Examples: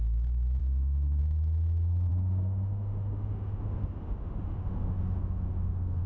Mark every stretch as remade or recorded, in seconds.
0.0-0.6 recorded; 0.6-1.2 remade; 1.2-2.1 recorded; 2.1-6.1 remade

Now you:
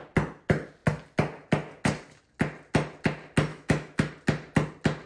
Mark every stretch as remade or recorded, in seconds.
0.0-3.5 recorded; 3.5-4.1 remade; 4.1-5.1 recorded